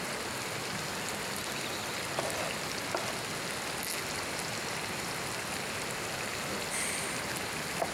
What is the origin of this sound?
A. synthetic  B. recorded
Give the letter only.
B